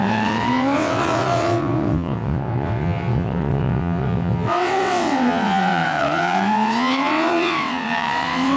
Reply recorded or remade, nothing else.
remade